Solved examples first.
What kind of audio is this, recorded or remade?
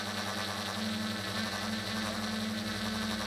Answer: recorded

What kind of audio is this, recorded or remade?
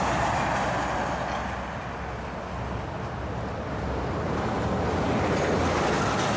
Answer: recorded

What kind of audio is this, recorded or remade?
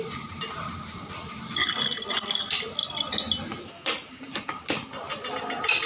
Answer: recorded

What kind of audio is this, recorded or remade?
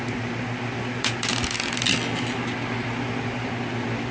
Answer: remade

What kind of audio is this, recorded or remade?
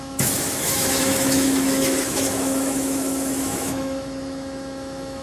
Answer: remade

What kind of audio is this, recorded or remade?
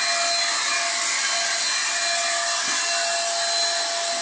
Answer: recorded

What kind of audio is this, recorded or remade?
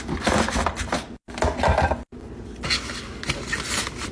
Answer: recorded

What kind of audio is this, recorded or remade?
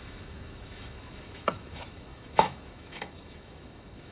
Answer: remade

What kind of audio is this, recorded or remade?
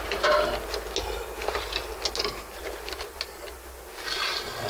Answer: recorded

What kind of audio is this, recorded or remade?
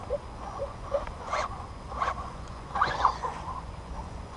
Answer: remade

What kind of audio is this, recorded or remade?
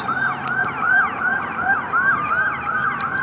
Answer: remade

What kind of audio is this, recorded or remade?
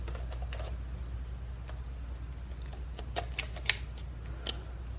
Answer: recorded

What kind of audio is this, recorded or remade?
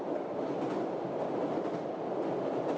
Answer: recorded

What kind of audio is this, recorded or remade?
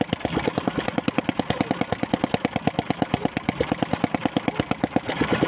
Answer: recorded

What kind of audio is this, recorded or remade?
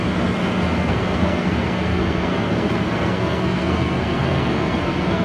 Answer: remade